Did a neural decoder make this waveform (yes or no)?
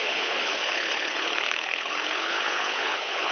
yes